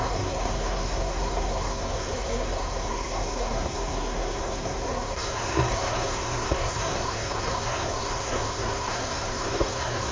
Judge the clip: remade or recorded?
remade